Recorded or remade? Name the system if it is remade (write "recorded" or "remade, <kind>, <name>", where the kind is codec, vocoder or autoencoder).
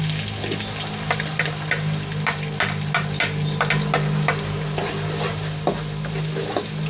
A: recorded